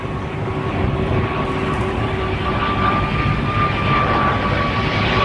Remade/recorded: recorded